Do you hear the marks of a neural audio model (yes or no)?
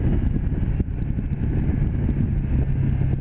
no